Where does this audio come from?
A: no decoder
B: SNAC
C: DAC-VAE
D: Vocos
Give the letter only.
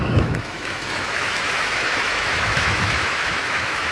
C